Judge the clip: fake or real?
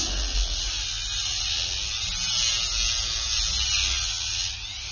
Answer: real